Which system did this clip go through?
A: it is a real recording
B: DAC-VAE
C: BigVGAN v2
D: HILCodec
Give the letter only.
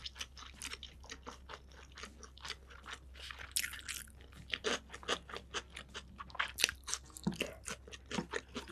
A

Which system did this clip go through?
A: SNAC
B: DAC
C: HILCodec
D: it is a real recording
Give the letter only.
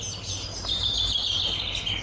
D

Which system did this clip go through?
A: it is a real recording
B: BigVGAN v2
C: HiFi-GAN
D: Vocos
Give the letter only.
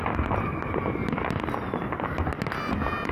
A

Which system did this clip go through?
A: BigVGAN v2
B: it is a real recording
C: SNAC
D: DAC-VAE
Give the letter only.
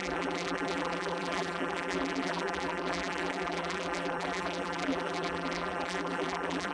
A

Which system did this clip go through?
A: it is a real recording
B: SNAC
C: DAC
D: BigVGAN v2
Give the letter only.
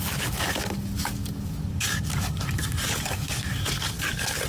C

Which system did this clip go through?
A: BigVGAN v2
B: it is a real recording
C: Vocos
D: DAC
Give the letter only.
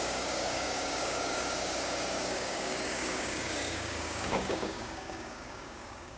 D